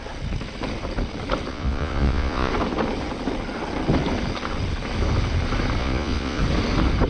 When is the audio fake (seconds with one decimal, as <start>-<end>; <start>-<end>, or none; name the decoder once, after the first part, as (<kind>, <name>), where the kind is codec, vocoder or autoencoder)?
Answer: 1.5-2.5 (vocoder, Vocos); 5.8-6.4